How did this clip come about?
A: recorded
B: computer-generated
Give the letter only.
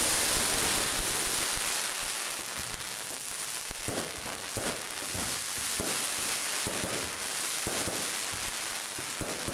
A